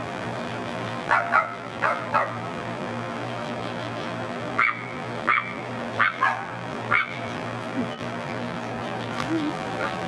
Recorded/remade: remade